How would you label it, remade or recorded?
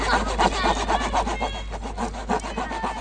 recorded